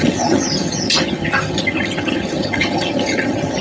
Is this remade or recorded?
remade